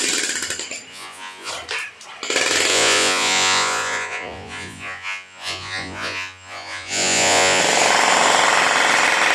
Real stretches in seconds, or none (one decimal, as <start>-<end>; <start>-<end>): 0.0-0.9; 1.5-2.7; 7.6-9.3